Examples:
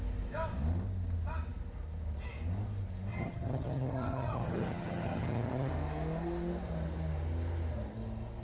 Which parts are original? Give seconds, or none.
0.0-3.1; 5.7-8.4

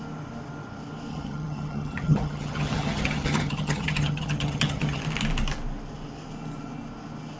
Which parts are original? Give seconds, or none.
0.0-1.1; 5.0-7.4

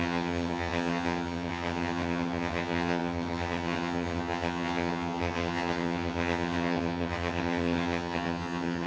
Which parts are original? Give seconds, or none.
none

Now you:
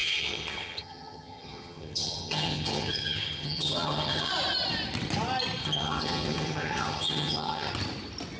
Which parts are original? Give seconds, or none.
4.3-5.6; 7.7-8.4

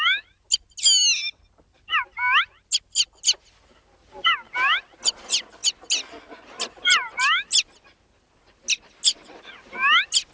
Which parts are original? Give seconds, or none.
0.0-10.3

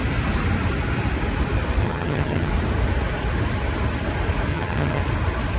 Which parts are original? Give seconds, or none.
0.0-1.8; 2.5-4.5; 5.0-5.6

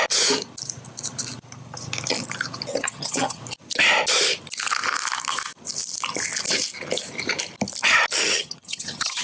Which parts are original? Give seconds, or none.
0.0-2.7; 3.4-8.2